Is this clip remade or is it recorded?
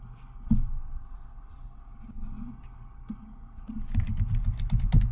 recorded